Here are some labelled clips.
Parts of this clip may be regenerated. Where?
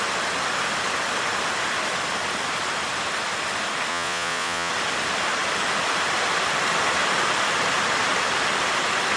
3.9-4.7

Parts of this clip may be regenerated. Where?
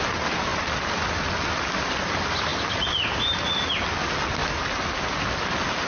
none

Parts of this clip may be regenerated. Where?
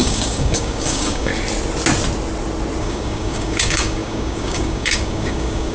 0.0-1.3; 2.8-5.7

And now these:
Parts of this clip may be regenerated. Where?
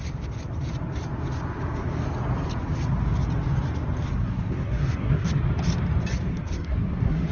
4.2-5.4; 6.3-7.3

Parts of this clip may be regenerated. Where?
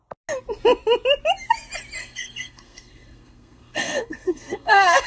2.0-5.1